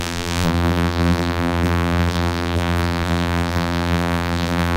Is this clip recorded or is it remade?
remade